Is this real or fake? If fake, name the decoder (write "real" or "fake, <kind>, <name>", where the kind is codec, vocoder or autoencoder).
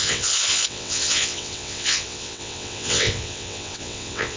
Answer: fake, vocoder, WaveNeXt